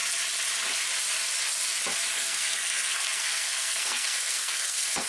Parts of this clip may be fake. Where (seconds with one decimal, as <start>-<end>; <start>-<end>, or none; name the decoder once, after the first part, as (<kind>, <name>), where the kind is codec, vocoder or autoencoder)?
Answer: 2.1-5.1 (codec, SNAC)